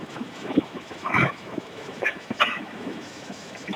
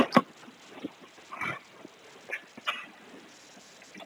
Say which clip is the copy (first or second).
first